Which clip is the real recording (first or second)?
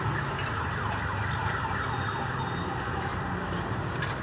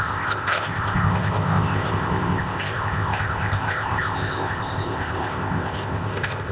first